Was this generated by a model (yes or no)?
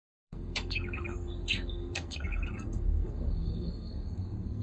yes